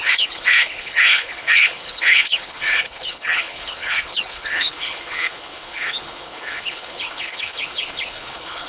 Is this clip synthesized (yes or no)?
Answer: yes